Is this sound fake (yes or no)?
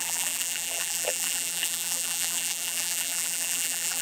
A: yes